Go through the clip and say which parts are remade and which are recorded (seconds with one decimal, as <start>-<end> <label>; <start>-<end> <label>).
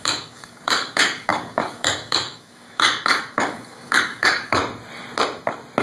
0.0-4.6 remade; 4.6-5.8 recorded